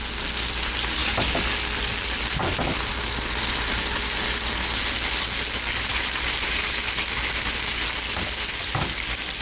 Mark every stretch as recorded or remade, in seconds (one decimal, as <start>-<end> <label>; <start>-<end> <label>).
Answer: 0.0-5.9 recorded; 5.9-6.7 remade; 6.7-9.4 recorded